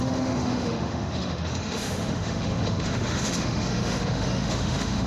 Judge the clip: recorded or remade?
remade